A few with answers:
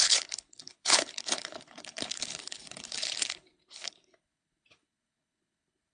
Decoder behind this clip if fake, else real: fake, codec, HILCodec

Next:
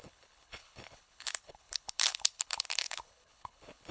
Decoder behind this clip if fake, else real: fake, codec, HILCodec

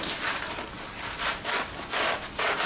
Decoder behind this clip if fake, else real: real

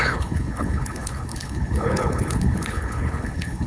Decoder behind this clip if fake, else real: fake, codec, HILCodec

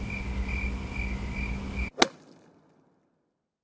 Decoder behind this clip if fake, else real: real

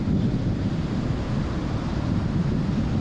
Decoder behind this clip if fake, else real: real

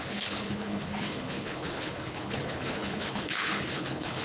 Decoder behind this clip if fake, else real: fake, codec, HILCodec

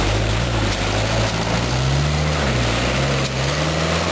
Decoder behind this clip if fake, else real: real